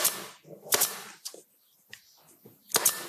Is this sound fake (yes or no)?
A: no